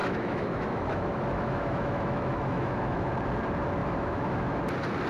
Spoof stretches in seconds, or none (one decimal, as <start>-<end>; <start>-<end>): 0.0-3.1; 3.8-4.6